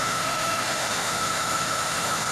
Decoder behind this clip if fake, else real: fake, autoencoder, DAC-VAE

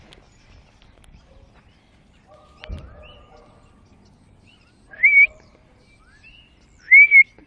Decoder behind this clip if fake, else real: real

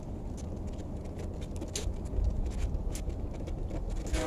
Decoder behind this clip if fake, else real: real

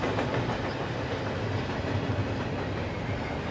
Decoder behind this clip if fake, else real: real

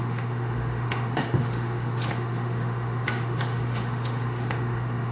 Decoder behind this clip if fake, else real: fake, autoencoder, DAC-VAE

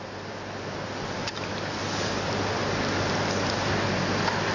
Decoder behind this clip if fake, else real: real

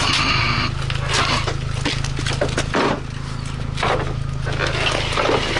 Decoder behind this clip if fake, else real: real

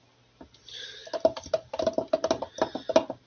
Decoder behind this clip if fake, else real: real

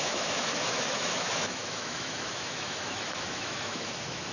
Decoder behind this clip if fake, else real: fake, autoencoder, DAC-VAE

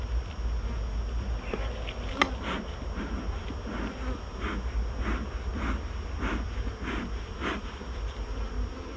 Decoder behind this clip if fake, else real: real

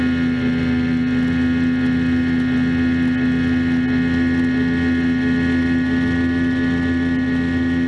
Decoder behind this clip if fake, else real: real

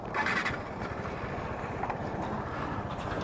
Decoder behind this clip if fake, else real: real